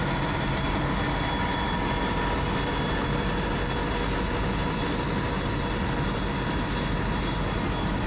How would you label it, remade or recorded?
recorded